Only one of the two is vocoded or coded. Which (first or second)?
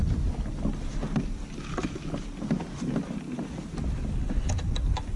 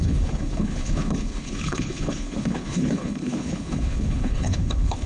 second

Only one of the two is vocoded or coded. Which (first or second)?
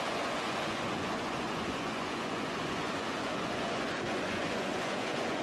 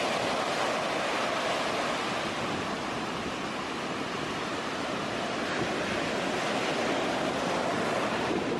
first